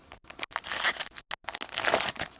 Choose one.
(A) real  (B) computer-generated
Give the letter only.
A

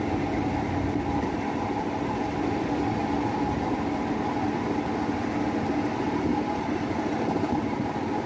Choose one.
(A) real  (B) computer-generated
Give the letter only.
A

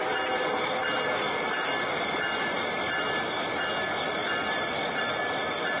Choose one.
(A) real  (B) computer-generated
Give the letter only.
A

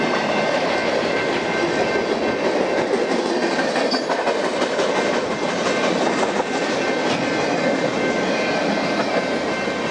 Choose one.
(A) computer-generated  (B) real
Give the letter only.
B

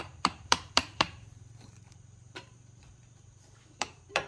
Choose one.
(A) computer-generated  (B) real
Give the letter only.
A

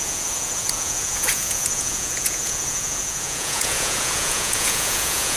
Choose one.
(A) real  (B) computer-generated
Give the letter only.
B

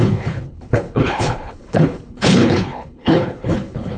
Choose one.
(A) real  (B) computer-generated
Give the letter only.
B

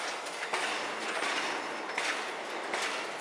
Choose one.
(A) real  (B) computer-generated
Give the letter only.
A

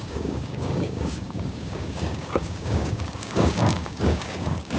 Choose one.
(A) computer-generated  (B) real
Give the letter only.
A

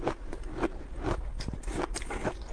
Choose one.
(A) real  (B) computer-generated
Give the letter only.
B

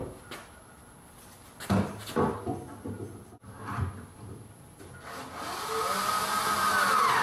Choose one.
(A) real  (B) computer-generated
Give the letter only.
A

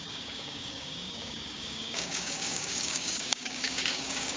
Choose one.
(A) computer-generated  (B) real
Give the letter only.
A